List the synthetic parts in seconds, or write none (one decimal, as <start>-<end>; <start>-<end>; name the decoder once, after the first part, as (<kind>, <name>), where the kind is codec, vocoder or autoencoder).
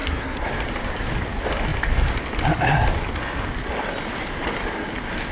0.0-0.5 (codec, SNAC)